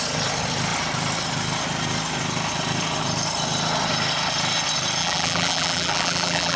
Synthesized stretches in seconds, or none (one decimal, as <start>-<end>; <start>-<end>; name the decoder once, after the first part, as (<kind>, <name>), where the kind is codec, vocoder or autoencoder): 5.0-6.6 (vocoder, BigVGAN v2)